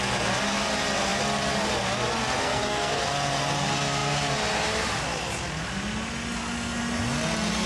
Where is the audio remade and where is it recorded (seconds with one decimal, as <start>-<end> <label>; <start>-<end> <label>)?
0.0-2.4 recorded; 2.4-3.0 remade; 3.0-7.7 recorded